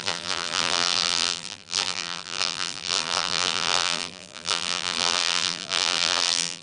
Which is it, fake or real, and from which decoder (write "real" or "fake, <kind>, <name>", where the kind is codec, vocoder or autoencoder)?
fake, vocoder, BigVGAN v2